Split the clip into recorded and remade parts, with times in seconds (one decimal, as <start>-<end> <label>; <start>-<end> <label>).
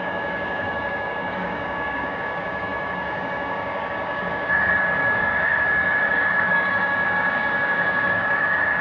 0.0-8.8 remade